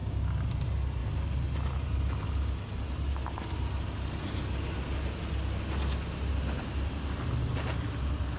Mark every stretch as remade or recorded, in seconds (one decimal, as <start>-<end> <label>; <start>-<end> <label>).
0.0-0.5 remade; 0.5-8.4 recorded